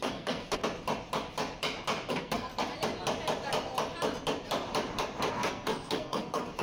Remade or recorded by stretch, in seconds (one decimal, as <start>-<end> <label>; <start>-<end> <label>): 0.0-0.6 remade; 0.6-2.1 recorded; 2.1-2.5 remade; 2.5-5.3 recorded; 5.3-6.6 remade